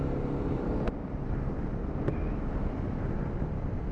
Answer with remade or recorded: remade